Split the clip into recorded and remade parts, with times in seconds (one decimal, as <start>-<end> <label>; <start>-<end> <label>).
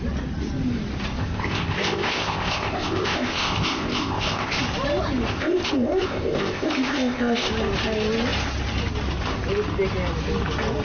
0.0-1.2 recorded; 1.2-4.6 remade; 4.6-5.3 recorded; 5.3-7.5 remade; 7.5-10.8 recorded